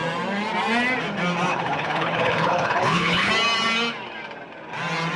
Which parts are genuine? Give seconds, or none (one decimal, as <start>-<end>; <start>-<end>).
0.0-1.5; 3.3-5.2